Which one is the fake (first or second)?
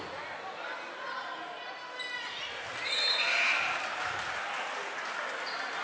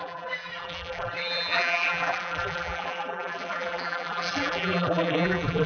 second